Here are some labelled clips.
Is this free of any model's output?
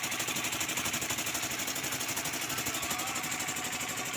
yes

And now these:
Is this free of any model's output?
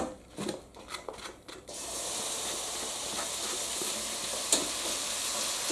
yes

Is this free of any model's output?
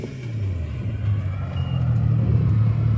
yes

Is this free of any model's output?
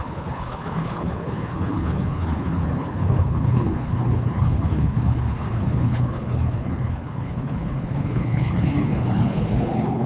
no